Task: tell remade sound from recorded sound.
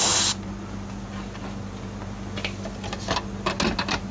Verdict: recorded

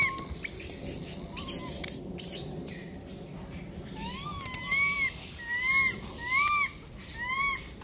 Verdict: recorded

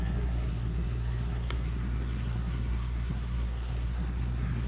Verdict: remade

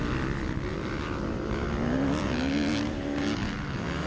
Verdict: recorded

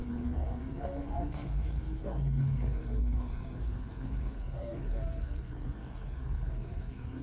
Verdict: remade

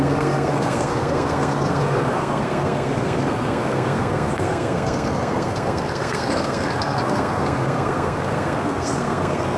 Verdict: remade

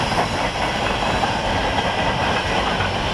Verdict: recorded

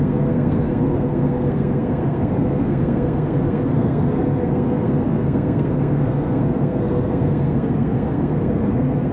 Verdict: remade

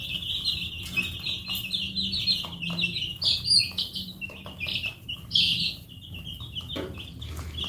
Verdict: recorded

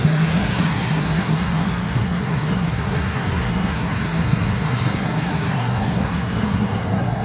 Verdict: remade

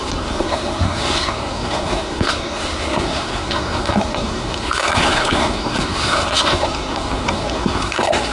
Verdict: remade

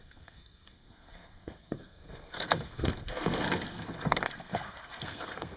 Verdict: remade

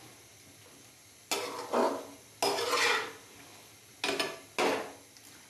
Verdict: recorded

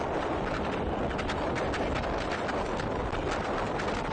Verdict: recorded